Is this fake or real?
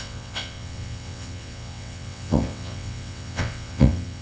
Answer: fake